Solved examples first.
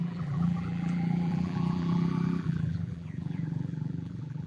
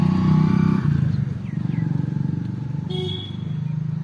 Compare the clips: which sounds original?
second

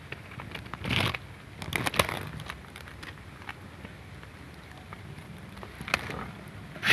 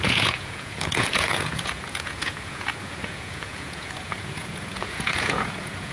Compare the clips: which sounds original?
first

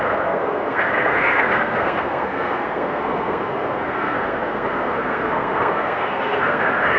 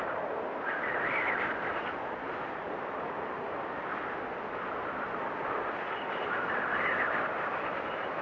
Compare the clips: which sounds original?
second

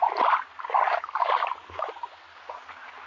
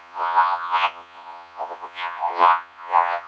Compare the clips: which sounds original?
first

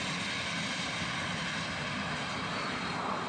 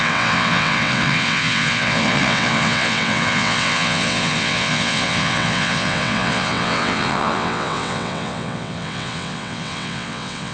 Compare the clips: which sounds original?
first